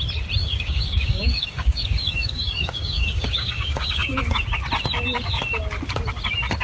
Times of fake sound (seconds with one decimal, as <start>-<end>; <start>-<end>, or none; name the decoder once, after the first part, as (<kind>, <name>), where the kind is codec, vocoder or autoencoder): 0.4-4.2 (codec, DAC)